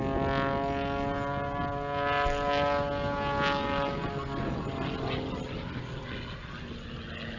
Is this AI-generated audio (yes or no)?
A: no